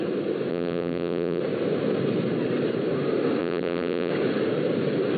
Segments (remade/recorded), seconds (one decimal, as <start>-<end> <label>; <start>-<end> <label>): 0.0-0.5 recorded; 0.5-1.4 remade; 1.4-3.4 recorded; 3.4-4.1 remade; 4.1-5.2 recorded